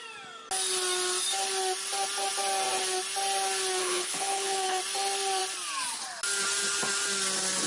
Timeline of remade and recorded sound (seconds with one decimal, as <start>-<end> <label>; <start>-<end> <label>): 0.0-3.8 recorded; 3.8-4.8 remade; 4.8-7.7 recorded